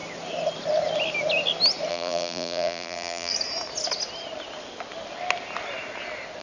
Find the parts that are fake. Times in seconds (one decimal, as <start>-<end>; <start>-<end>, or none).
1.9-3.3